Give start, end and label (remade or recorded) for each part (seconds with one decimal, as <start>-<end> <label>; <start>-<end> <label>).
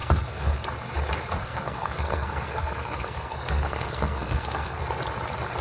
0.0-0.7 remade; 0.7-1.4 recorded; 1.4-4.8 remade; 4.8-5.6 recorded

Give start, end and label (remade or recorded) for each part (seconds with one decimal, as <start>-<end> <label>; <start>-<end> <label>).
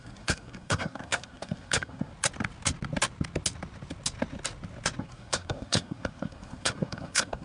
0.0-2.1 remade; 2.1-5.0 recorded; 5.0-7.4 remade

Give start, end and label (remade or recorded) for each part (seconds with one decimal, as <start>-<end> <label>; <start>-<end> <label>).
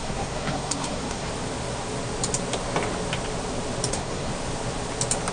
0.0-1.3 remade; 1.3-3.9 recorded; 3.9-4.3 remade; 4.3-5.3 recorded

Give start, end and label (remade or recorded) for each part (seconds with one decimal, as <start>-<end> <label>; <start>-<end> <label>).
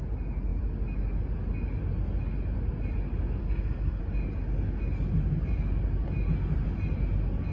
0.0-3.4 recorded; 3.4-4.0 remade; 4.0-7.5 recorded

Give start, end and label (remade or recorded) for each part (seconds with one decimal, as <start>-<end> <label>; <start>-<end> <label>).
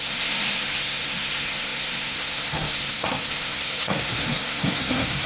0.0-5.3 remade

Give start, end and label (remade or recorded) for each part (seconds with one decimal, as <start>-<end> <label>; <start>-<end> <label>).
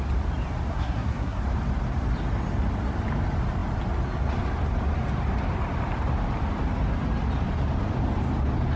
0.0-0.7 recorded; 0.7-1.4 remade; 1.4-8.8 recorded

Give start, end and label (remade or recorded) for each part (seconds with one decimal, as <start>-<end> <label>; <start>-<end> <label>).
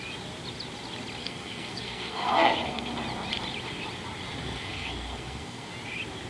0.0-1.2 recorded; 1.2-2.9 remade; 2.9-4.4 recorded; 4.4-5.7 remade; 5.7-6.3 recorded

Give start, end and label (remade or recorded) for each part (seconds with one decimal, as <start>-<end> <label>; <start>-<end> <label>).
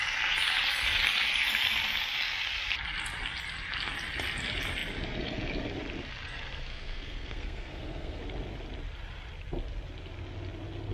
0.0-6.7 recorded; 6.7-8.2 remade; 8.2-10.9 recorded